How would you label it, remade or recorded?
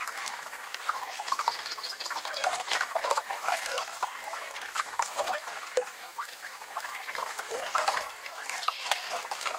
remade